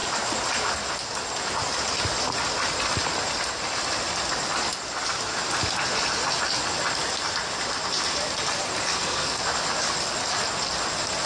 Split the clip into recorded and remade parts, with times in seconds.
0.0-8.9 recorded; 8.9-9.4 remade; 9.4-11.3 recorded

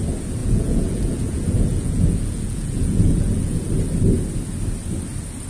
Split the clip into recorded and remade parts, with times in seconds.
0.0-0.4 recorded; 0.4-3.7 remade; 3.7-5.5 recorded

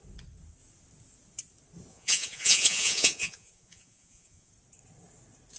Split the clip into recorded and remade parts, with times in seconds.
0.0-1.9 recorded; 1.9-4.5 remade; 4.5-5.6 recorded

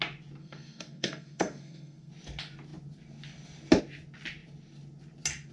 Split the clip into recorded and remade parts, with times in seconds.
0.0-0.4 recorded; 0.4-2.1 remade; 2.1-5.5 recorded

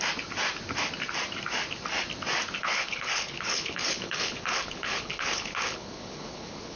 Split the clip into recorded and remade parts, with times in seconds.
0.0-2.6 recorded; 2.6-6.8 remade

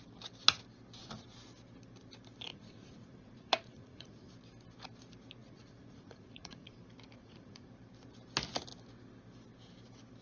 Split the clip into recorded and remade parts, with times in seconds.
0.0-2.5 recorded; 2.5-4.3 remade; 4.3-5.4 recorded; 5.4-6.8 remade; 6.8-7.2 recorded; 7.2-7.7 remade; 7.7-10.2 recorded

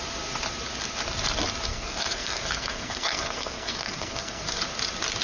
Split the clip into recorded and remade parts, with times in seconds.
0.0-1.7 recorded; 1.7-4.6 remade; 4.6-5.2 recorded